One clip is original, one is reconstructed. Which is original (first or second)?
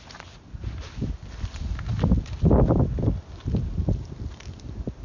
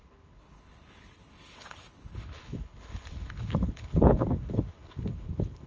first